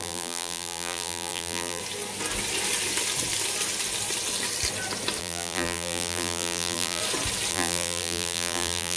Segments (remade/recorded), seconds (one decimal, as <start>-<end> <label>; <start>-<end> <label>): 0.0-1.8 remade; 1.8-5.2 recorded; 5.2-7.0 remade; 7.0-7.5 recorded; 7.5-9.0 remade